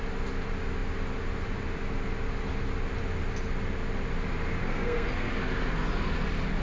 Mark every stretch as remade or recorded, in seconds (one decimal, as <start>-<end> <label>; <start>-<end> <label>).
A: 0.0-4.6 recorded; 4.6-5.3 remade; 5.3-6.6 recorded